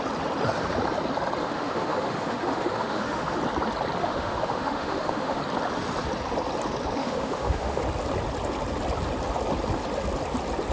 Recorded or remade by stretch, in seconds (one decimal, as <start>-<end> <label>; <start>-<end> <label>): 0.0-1.4 recorded; 1.4-3.4 remade; 3.4-4.0 recorded; 4.0-5.4 remade; 5.4-7.0 recorded; 7.0-7.8 remade; 7.8-10.7 recorded